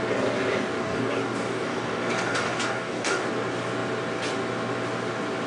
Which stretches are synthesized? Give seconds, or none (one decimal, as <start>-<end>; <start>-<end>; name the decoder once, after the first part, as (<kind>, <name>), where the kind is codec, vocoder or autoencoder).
0.8-3.3 (codec, DAC)